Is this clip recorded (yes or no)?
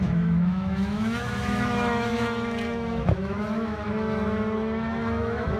no